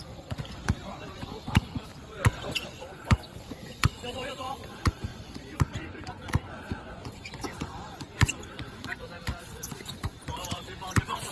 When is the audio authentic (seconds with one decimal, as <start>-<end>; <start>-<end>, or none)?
none